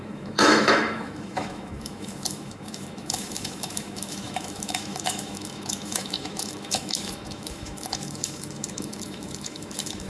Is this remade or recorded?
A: remade